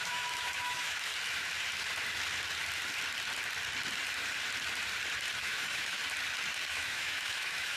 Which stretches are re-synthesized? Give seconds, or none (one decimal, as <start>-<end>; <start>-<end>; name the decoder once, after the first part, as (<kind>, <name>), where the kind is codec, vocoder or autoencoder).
0.0-1.1 (autoencoder, DAC-VAE); 5.4-6.0; 6.7-7.8